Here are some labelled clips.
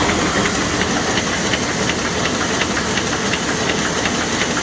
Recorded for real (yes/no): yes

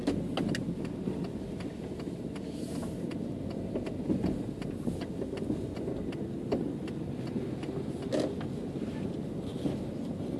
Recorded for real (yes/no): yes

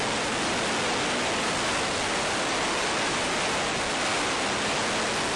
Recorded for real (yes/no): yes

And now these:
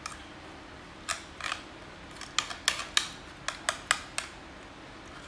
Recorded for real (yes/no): yes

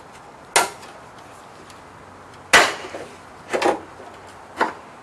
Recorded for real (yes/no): yes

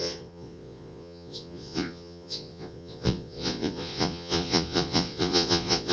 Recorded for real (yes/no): no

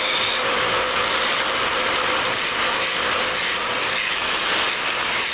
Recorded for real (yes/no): yes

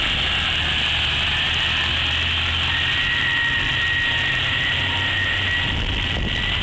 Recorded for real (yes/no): yes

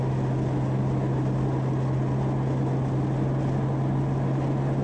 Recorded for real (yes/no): yes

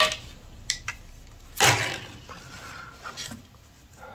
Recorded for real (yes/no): yes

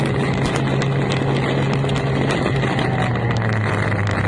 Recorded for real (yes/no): yes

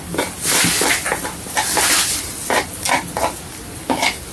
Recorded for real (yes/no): yes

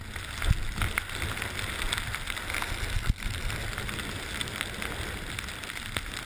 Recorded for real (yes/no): yes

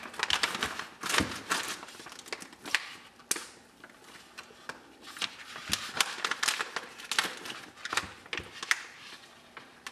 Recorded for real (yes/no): yes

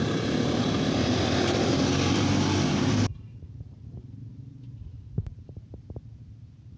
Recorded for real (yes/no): no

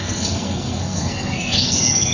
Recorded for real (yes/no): no